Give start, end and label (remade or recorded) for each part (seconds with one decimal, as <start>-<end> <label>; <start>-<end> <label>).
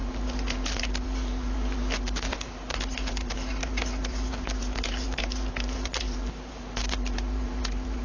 0.0-8.0 remade